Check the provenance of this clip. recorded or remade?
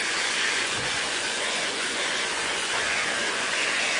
remade